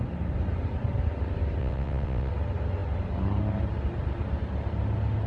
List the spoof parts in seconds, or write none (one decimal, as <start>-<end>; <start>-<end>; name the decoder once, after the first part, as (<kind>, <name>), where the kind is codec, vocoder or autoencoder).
1.6-2.3 (vocoder, WaveNeXt)